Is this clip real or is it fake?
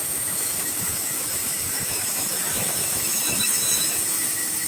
fake